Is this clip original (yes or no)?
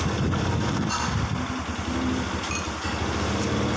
yes